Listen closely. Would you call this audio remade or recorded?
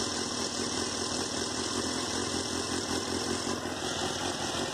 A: recorded